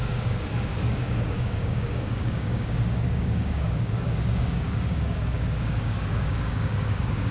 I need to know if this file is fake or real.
fake